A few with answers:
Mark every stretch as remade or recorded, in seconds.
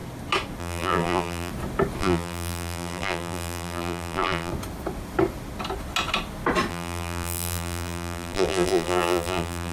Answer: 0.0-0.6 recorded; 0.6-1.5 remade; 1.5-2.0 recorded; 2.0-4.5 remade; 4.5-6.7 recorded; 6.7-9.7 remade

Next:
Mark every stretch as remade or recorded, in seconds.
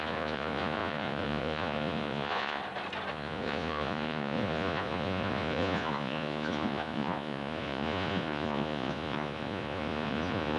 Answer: 0.0-2.6 remade; 2.6-3.1 recorded; 3.1-10.6 remade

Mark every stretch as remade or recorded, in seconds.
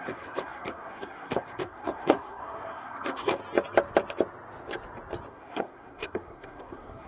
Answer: 0.0-3.4 remade; 3.4-5.3 recorded; 5.3-7.1 remade